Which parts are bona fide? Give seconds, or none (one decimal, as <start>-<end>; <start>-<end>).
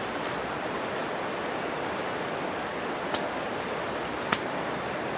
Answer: none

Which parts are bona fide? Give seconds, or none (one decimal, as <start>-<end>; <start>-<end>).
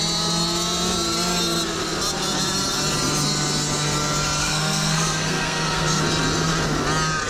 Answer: 0.0-4.4; 6.0-7.3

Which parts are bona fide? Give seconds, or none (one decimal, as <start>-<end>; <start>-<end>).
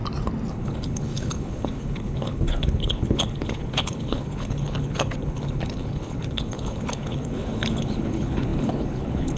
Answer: 0.0-0.5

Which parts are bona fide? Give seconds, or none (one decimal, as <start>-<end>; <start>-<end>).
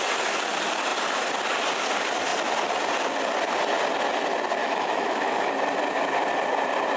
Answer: 0.0-4.6; 5.5-7.0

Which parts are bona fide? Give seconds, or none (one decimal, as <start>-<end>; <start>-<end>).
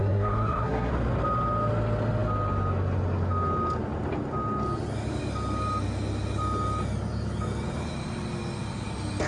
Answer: 0.9-9.3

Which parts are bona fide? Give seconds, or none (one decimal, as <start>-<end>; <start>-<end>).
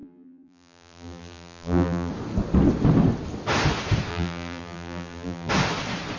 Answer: 2.1-4.1; 5.5-6.2